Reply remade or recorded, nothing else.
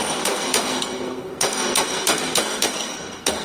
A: remade